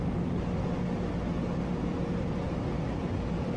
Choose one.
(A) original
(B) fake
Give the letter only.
A